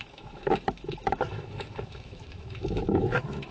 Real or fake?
fake